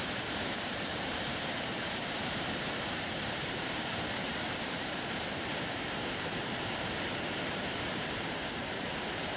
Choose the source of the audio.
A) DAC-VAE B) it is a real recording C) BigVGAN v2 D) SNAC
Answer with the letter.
C